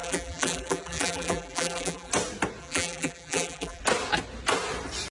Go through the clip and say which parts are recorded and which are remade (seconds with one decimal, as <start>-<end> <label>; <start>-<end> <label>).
0.0-2.1 remade; 2.1-2.6 recorded; 2.6-3.8 remade; 3.8-5.1 recorded